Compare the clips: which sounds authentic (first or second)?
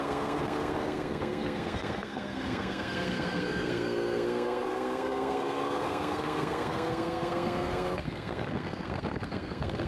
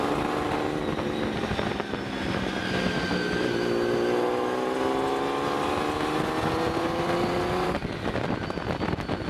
second